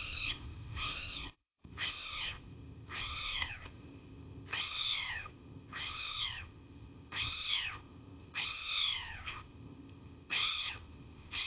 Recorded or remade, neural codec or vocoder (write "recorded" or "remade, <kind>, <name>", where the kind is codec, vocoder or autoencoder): remade, codec, ZipCodec